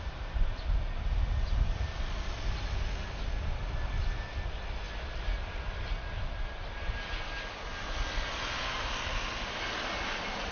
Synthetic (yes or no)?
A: no